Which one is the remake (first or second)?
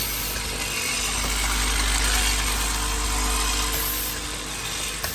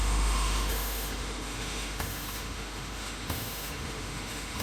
second